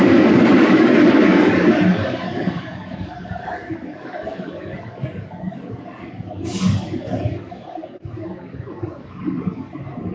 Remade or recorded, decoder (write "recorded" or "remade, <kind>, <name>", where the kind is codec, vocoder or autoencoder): remade, codec, DAC